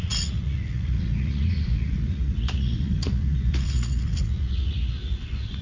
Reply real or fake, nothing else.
fake